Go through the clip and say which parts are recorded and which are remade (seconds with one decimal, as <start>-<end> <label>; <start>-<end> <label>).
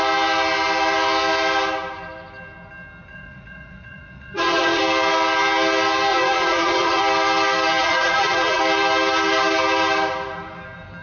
0.0-3.1 recorded; 3.1-4.8 remade; 4.8-6.1 recorded; 6.1-7.0 remade; 7.0-7.8 recorded; 7.8-8.6 remade; 8.6-11.0 recorded